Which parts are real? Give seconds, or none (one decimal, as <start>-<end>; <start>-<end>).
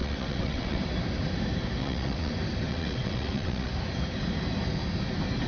0.8-1.8; 2.3-2.7; 3.7-5.5